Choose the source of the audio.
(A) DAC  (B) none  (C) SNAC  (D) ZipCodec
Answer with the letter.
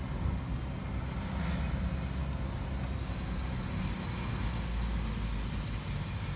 B